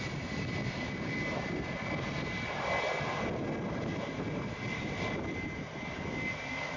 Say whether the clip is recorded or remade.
recorded